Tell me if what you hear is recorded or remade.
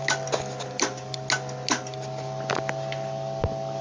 recorded